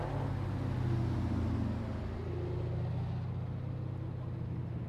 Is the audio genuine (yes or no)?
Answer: yes